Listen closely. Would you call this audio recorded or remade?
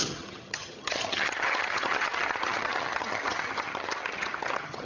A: remade